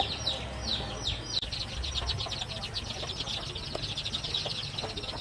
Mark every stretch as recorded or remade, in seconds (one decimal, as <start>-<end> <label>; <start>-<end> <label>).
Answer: 0.0-5.2 recorded